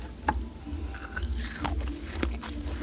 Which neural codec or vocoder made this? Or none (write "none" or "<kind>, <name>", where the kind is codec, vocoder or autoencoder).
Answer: none